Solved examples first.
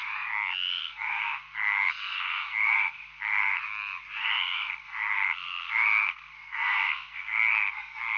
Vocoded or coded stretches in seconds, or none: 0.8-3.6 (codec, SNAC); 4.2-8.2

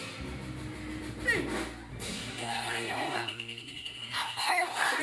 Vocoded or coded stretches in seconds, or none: 1.9-5.0 (codec, SNAC)

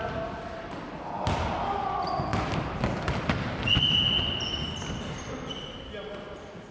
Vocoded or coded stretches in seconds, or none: none

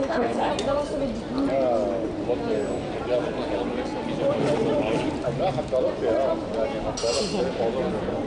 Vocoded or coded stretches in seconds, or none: 0.0-0.5 (codec, HILCodec)